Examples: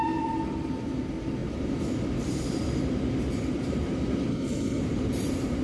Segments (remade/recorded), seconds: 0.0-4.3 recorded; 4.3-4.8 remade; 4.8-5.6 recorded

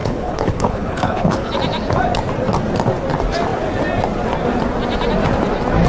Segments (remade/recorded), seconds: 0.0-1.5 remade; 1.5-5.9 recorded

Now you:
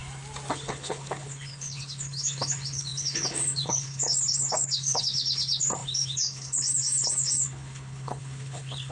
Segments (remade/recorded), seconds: 0.0-0.5 recorded; 0.5-8.9 remade

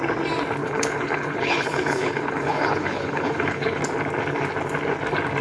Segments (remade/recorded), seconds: 0.0-0.6 recorded; 0.6-3.8 remade; 3.8-5.4 recorded